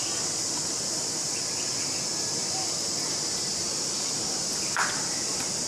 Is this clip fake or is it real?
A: real